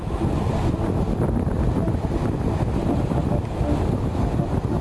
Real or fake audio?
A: real